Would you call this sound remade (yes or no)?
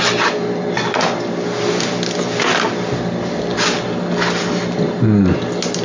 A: no